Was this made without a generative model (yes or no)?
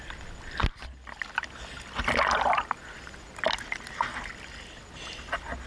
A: yes